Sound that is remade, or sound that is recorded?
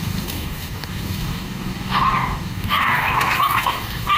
remade